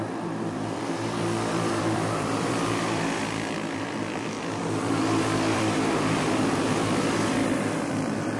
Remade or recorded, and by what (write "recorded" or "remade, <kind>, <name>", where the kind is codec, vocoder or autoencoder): remade, vocoder, BigVGAN v2